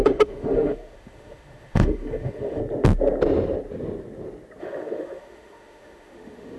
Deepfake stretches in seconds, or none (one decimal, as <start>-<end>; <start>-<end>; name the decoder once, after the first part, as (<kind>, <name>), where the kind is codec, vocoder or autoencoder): 0.0-2.6 (autoencoder, DAC-VAE); 4.6-6.6